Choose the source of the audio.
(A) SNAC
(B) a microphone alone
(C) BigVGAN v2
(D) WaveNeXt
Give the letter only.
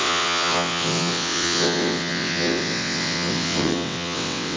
D